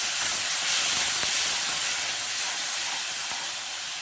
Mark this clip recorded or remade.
recorded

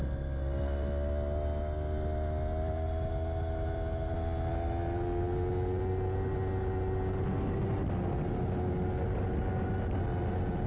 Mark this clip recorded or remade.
recorded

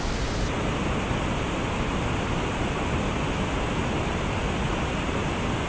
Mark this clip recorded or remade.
recorded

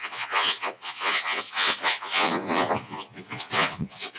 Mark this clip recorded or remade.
remade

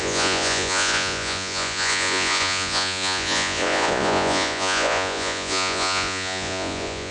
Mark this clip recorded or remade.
remade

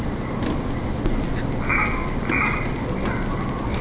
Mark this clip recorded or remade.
recorded